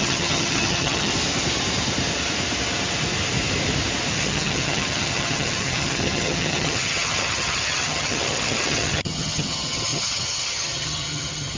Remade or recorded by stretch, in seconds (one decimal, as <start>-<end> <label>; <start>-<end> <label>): 0.0-1.1 remade; 1.1-4.1 recorded; 4.1-11.6 remade